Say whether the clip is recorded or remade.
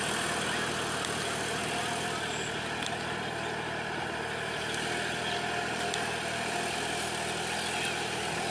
recorded